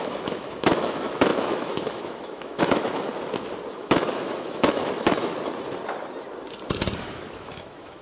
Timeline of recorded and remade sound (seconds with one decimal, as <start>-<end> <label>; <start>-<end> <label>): 0.0-3.1 remade; 3.1-3.7 recorded; 3.7-5.3 remade; 5.3-7.0 recorded; 7.0-8.0 remade